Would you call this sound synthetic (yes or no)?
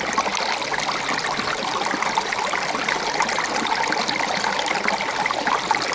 no